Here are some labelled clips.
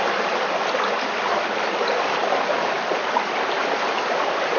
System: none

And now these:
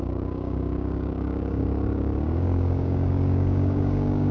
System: codec, DAC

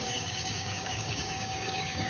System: codec, DAC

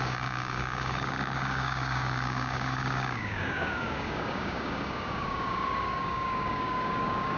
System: codec, DAC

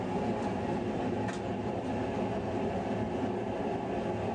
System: none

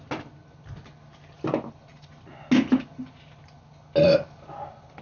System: none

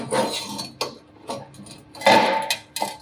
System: none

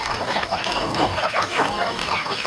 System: codec, DAC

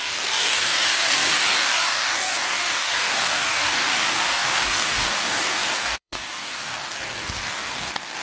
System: codec, DAC